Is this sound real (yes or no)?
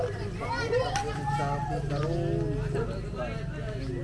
yes